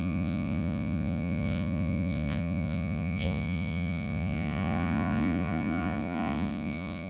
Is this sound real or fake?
fake